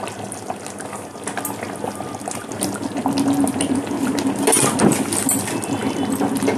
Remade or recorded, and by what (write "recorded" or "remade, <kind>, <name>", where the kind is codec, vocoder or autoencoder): recorded